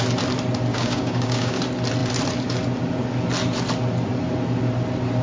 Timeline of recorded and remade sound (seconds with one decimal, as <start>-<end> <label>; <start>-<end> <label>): 0.0-0.7 recorded; 0.7-1.6 remade; 1.6-5.2 recorded